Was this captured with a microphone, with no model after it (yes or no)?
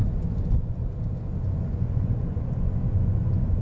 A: no